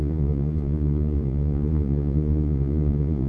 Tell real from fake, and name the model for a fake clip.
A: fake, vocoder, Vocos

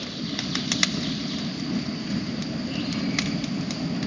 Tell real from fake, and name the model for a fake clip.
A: real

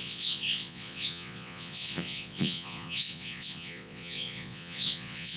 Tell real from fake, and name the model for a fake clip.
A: fake, vocoder, Vocos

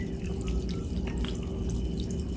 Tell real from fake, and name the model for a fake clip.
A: real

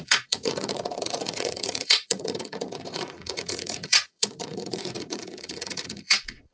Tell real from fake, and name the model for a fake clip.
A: fake, vocoder, Vocos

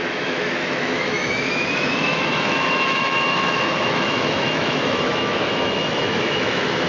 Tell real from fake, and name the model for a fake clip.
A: fake, autoencoder, DAC-VAE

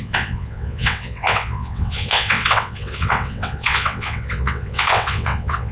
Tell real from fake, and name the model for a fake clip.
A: fake, vocoder, WaveNeXt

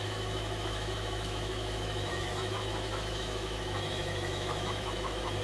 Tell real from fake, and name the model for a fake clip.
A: fake, autoencoder, DAC-VAE